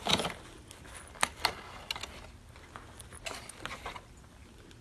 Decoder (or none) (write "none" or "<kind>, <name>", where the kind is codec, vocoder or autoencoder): none